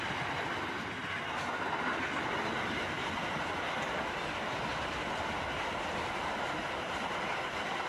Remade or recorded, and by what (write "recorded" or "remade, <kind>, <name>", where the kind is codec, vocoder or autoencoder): recorded